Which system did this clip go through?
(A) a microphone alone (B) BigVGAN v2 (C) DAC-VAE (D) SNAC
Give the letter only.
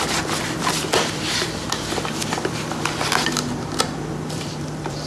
B